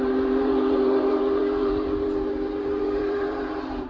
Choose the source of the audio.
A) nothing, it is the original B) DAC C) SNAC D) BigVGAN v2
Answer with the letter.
D